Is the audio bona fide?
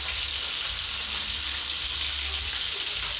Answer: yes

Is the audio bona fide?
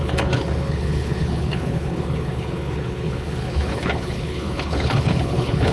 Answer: no